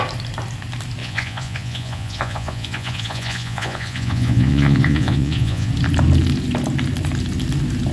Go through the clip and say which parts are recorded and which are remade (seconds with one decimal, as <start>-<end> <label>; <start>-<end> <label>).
0.0-1.0 recorded; 1.0-5.7 remade; 5.7-7.9 recorded